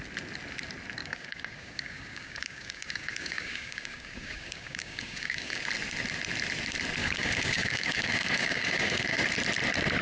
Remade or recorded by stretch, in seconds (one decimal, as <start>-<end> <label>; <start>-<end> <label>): 0.0-1.0 recorded; 1.0-5.6 remade; 5.6-7.0 recorded; 7.0-9.2 remade; 9.2-10.0 recorded